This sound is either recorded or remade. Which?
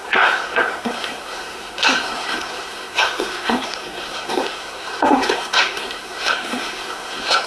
remade